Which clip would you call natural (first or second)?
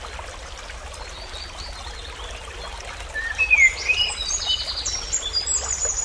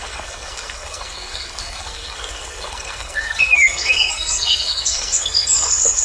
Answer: first